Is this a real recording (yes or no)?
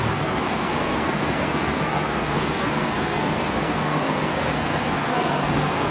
no